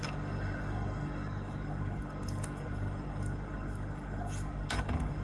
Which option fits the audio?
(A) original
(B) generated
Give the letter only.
B